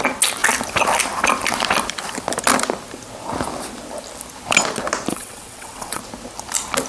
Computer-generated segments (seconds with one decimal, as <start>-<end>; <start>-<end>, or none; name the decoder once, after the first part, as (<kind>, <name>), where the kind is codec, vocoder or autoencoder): 5.1-6.0 (vocoder, WaveNeXt)